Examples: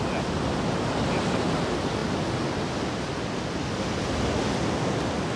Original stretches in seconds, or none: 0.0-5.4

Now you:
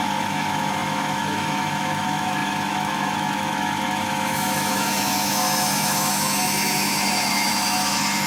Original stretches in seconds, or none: none